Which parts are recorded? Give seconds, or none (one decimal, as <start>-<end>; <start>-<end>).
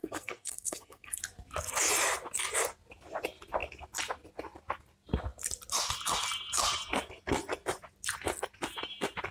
1.2-9.3